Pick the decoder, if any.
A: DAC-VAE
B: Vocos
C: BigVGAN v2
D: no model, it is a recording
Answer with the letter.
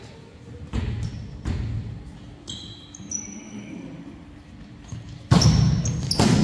D